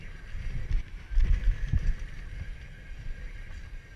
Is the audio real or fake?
real